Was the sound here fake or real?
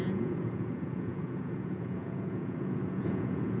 fake